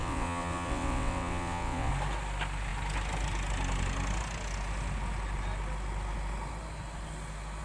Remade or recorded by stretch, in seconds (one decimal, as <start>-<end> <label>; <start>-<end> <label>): 0.0-1.9 remade; 1.9-7.6 recorded